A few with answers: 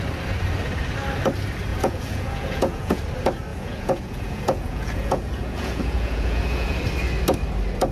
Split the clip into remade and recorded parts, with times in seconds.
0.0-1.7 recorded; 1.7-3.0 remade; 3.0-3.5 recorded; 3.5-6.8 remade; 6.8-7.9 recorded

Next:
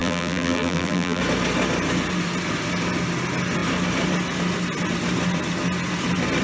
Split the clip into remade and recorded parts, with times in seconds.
0.0-1.2 remade; 1.2-6.4 recorded

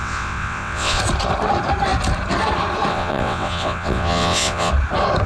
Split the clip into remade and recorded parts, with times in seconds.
0.0-1.0 remade; 1.0-2.9 recorded; 2.9-4.7 remade; 4.7-5.3 recorded

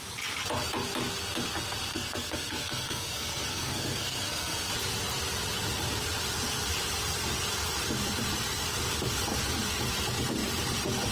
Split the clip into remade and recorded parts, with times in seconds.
0.0-1.9 recorded; 1.9-4.7 remade; 4.7-11.1 recorded

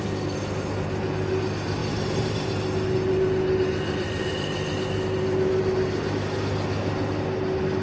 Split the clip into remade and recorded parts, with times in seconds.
0.0-1.8 recorded; 1.8-2.5 remade; 2.5-7.8 recorded

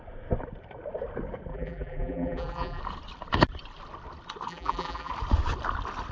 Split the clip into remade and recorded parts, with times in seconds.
0.0-1.5 recorded; 1.5-2.8 remade; 2.8-4.5 recorded; 4.5-5.1 remade; 5.1-6.1 recorded